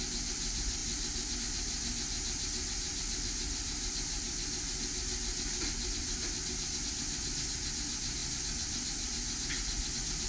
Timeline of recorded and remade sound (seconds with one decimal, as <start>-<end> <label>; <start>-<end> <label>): 0.0-10.3 recorded